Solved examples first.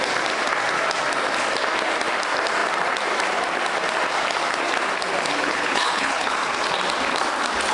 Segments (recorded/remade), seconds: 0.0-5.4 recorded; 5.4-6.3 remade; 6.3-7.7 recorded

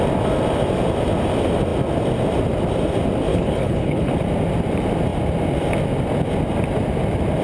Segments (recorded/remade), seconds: 0.0-3.3 recorded; 3.3-4.1 remade; 4.1-7.4 recorded